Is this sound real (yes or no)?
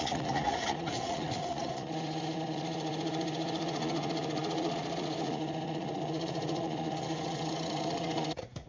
no